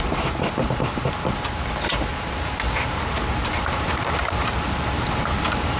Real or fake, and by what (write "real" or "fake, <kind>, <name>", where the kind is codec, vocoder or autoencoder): real